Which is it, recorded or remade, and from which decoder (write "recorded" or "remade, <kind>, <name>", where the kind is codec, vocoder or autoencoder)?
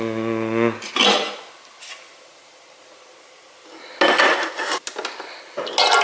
recorded